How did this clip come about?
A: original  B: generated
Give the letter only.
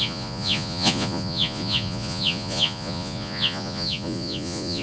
B